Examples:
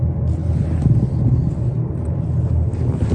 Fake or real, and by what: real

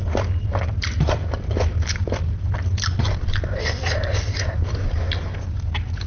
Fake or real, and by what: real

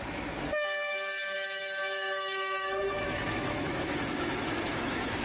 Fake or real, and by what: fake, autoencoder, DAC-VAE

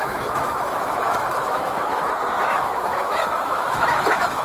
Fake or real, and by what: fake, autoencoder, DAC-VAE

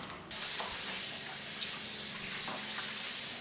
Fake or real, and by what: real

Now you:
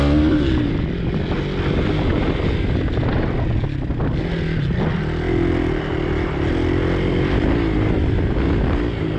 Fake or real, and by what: real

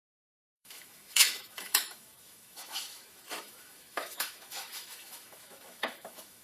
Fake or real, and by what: fake, autoencoder, DAC-VAE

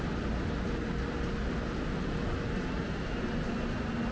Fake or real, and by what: real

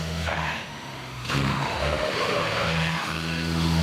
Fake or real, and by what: fake, autoencoder, DAC-VAE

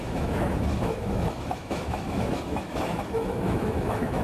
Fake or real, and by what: fake, autoencoder, DAC-VAE